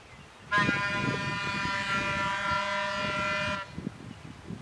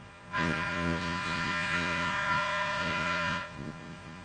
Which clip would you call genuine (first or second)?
first